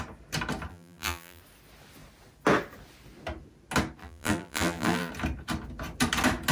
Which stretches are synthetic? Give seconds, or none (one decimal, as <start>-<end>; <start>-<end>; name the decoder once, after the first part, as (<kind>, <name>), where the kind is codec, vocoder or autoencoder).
0.7-1.4 (vocoder, BigVGAN v2); 4.0-5.1

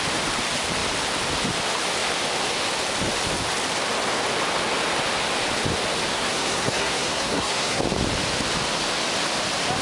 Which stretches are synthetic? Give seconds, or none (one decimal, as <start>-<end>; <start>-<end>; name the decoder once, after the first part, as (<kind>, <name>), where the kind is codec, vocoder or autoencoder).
6.1-7.8 (codec, SNAC)

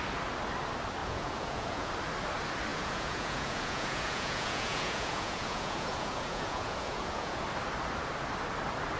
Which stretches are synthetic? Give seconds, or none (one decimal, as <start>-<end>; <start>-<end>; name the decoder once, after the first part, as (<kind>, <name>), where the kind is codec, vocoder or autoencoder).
1.0-1.9 (vocoder, Vocos); 2.7-7.4

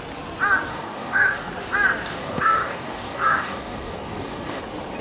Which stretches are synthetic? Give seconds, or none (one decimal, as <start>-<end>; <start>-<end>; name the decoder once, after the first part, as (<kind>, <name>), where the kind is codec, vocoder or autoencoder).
0.7-1.5 (codec, DAC); 2.1-4.6

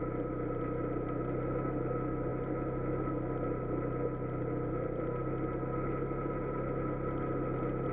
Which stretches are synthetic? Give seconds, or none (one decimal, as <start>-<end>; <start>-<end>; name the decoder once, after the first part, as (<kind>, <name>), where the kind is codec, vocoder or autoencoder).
none

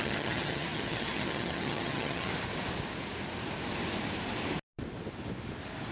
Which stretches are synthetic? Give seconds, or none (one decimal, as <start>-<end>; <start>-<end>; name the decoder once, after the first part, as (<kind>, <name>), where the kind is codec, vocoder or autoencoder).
0.0-2.3 (vocoder, HiFi-GAN)